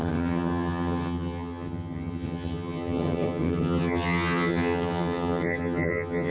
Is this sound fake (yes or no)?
yes